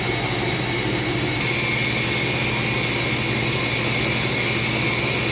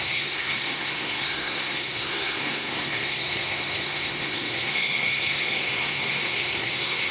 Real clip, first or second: first